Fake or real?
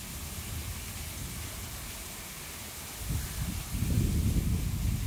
real